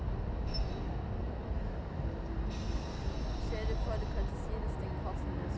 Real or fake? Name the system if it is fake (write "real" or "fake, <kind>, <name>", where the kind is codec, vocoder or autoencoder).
real